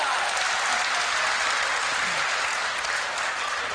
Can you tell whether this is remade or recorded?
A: remade